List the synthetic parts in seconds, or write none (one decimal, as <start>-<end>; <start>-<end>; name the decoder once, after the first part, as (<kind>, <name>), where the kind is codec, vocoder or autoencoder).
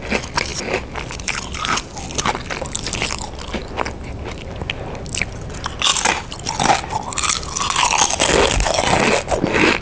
none